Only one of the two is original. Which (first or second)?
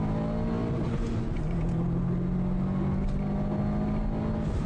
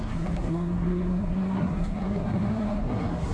first